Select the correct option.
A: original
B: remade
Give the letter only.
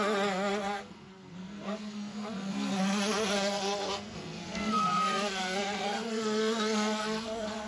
B